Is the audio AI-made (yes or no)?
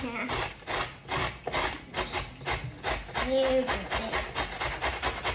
no